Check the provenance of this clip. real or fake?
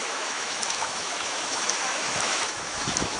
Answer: fake